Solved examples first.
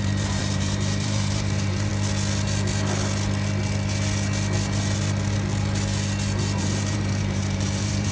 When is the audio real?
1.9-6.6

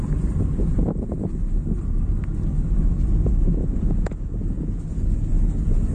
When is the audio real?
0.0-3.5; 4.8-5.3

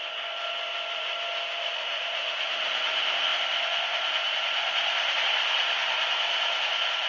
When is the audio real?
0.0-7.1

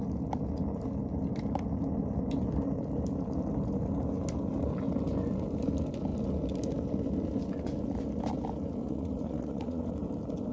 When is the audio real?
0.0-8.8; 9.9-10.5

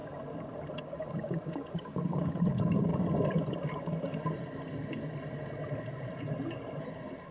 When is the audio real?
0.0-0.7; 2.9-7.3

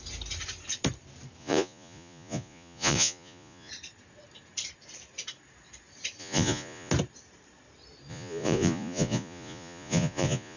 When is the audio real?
0.0-1.4; 3.7-6.2; 6.9-8.1

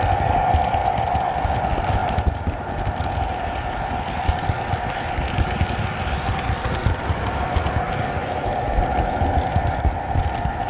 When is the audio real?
0.0-6.8; 7.4-10.7

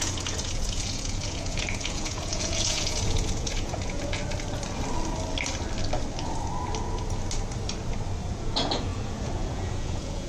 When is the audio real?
4.2-8.3